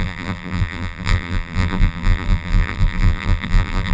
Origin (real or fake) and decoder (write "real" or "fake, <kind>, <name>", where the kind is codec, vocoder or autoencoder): fake, vocoder, BigVGAN v2